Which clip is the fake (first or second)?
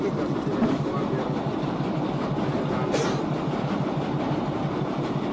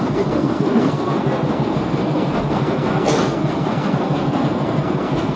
second